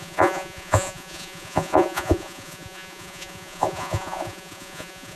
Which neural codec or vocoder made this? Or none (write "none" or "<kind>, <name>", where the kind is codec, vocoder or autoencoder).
vocoder, Vocos